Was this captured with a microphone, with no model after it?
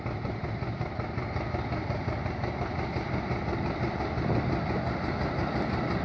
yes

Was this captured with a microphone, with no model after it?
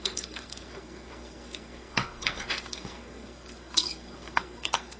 no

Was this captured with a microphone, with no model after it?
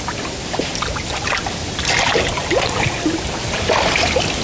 yes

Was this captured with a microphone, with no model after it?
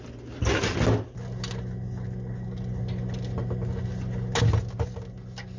yes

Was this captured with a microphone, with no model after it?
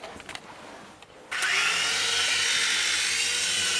yes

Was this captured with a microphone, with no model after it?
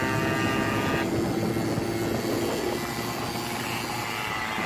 yes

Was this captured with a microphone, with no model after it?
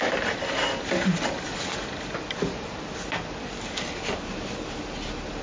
yes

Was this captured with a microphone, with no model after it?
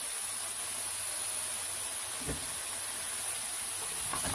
yes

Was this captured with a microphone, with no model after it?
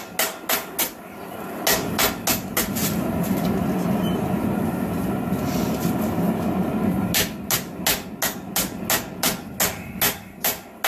yes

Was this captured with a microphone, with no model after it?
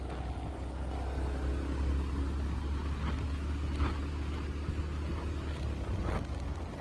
yes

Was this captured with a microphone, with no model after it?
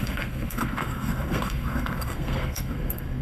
no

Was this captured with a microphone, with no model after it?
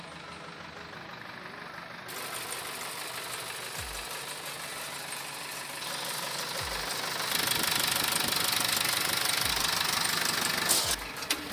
yes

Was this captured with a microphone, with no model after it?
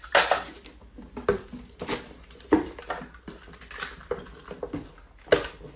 yes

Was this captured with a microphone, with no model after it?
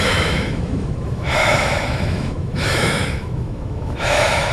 no